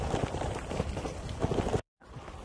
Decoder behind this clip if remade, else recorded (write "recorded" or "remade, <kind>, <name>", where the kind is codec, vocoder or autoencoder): remade, vocoder, BigVGAN v2